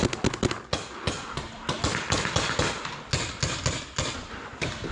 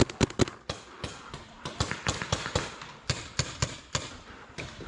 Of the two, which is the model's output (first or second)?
second